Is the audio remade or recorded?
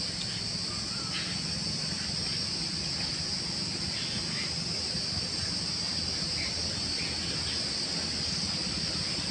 recorded